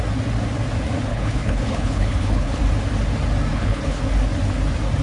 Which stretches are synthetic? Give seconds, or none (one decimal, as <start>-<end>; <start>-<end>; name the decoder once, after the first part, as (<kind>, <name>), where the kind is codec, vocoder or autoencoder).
1.1-2.6 (codec, HILCodec); 3.5-4.0